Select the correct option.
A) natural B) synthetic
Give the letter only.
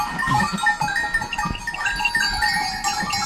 A